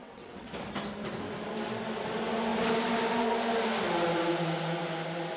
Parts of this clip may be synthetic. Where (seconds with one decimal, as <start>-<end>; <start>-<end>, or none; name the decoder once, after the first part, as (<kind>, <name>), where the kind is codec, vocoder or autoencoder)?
0.0-0.5 (vocoder, WaveNeXt)

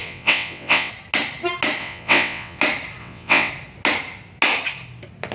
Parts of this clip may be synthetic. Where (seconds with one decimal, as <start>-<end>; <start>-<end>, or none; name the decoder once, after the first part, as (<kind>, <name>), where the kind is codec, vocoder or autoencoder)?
0.0-0.9 (vocoder, WaveNeXt); 1.8-2.6; 3.0-3.5

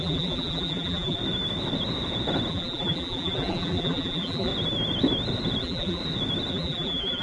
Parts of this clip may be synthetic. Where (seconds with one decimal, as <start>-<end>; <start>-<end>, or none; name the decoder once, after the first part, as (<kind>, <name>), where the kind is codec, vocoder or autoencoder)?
0.0-1.2 (vocoder, BigVGAN v2); 2.5-4.5; 5.6-6.0; 6.5-7.2

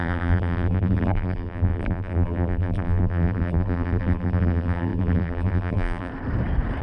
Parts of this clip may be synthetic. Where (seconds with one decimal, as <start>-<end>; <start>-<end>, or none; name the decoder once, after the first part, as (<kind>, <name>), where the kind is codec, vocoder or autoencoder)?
0.0-6.1 (vocoder, BigVGAN v2)

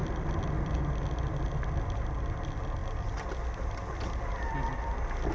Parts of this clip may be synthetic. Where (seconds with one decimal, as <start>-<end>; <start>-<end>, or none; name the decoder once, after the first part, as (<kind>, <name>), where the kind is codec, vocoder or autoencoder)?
none

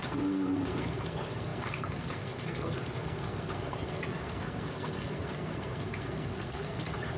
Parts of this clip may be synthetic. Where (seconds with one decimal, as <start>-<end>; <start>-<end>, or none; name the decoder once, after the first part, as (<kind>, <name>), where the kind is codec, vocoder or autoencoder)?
0.0-7.2 (codec, SNAC)

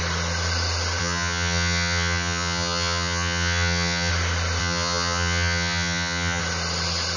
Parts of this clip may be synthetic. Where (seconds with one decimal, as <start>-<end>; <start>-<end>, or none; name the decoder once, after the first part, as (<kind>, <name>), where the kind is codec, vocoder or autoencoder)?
1.0-4.1 (vocoder, HiFi-GAN); 4.6-6.4

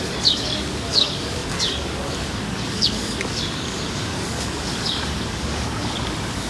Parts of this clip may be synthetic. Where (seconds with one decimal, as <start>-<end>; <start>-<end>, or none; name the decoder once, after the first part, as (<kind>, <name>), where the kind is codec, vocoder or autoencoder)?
0.0-6.5 (codec, DAC)